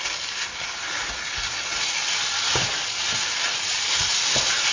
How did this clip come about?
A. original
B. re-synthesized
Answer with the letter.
A